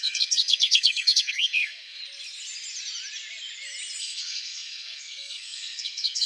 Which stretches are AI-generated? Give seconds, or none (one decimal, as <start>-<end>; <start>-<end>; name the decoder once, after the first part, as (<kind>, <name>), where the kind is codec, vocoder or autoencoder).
0.0-2.0 (codec, SNAC); 4.0-6.3